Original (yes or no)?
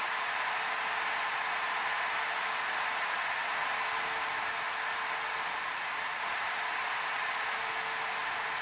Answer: yes